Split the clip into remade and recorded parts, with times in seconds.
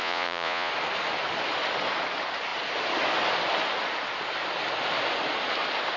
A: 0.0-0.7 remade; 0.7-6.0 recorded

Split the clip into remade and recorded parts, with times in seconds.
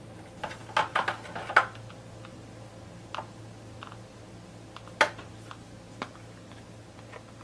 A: 0.0-7.4 recorded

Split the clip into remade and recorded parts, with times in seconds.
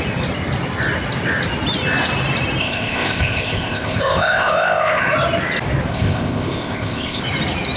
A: 0.0-2.6 recorded; 2.6-5.0 remade; 5.0-5.9 recorded; 5.9-7.2 remade; 7.2-7.8 recorded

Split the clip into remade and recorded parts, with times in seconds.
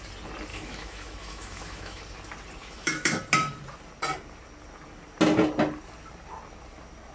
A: 0.0-0.5 recorded; 0.5-2.0 remade; 2.0-2.6 recorded; 2.6-3.2 remade; 3.2-7.1 recorded